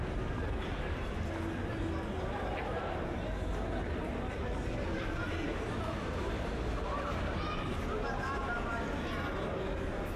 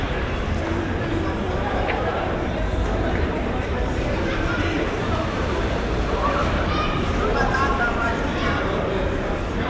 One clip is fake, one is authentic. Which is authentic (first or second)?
first